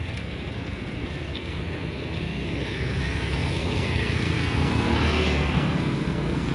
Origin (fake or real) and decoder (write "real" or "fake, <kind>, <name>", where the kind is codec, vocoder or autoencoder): fake, codec, SNAC